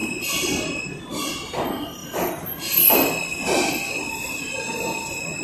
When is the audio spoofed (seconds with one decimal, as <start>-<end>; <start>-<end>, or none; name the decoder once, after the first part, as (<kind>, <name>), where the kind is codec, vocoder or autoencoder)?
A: 0.0-0.8 (vocoder, BigVGAN v2)